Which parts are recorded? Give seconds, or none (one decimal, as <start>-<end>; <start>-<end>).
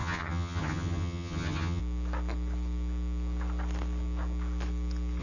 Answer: 1.8-5.2